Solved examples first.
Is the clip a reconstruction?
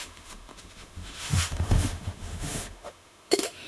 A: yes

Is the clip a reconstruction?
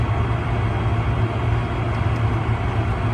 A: no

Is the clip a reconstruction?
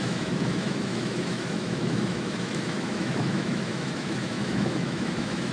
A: yes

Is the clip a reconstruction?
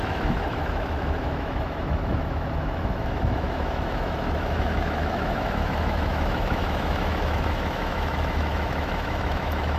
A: yes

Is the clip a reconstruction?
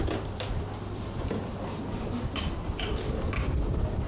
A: no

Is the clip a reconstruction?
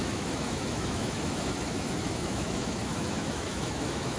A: yes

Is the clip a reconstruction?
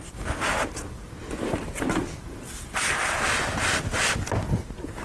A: no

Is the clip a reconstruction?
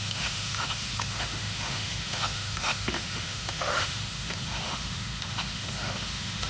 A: yes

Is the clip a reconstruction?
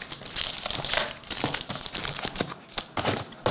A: no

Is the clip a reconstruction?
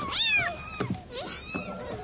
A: no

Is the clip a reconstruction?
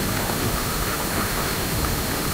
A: yes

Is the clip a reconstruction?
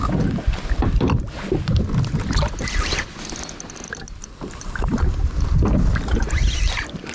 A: no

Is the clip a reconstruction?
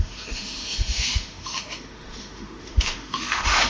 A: yes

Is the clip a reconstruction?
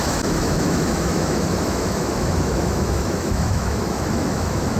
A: yes